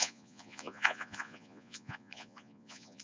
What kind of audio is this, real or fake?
fake